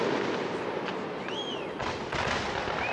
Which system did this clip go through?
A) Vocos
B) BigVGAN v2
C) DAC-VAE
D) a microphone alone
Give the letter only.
D